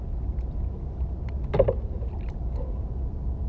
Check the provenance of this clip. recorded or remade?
recorded